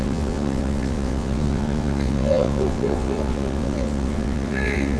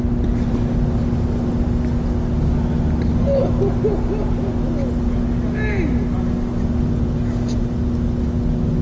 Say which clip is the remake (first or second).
first